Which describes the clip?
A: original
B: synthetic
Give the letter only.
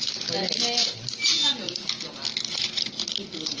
A